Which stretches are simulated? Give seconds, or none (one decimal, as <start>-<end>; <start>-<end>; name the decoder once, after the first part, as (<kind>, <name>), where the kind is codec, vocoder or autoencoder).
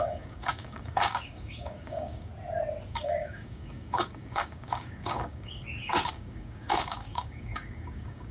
0.0-2.3 (codec, DAC); 2.9-8.3